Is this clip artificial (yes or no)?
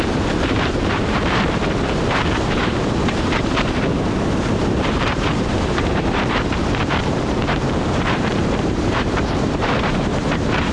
yes